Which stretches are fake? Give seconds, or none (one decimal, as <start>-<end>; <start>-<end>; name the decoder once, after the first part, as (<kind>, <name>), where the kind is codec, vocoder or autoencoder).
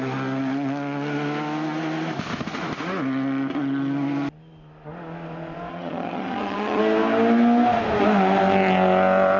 5.7-6.8 (vocoder, HiFi-GAN)